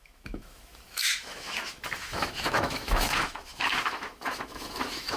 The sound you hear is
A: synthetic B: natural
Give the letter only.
A